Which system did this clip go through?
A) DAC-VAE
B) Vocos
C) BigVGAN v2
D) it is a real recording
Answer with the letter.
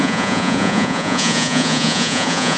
B